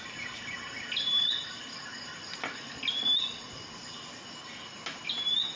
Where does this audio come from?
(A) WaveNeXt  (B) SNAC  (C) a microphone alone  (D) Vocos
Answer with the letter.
C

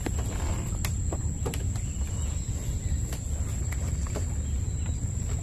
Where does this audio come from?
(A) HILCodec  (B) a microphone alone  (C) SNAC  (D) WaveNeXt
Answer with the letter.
B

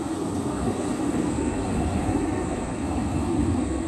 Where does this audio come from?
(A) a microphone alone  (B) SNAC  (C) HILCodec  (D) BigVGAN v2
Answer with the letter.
B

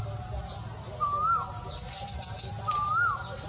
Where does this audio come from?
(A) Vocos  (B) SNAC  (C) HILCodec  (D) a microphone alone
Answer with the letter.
D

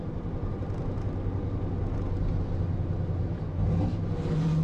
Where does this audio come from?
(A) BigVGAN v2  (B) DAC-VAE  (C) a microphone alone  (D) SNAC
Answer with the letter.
C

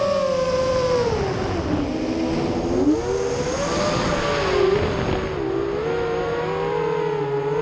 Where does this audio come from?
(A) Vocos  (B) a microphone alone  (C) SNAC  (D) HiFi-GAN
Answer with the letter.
B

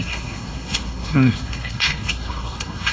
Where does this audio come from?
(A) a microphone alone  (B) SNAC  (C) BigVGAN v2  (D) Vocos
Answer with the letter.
B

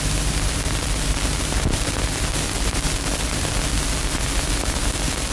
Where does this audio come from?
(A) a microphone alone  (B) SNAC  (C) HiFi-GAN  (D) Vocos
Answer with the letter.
A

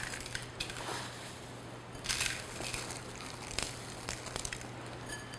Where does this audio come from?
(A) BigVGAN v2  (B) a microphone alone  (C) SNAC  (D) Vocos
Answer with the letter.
B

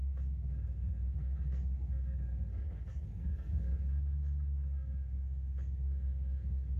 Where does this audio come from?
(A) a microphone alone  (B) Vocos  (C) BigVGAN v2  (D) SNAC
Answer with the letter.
D